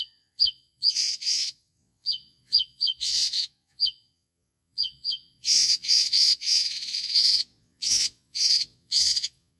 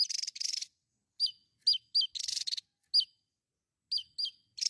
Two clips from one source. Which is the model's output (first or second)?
first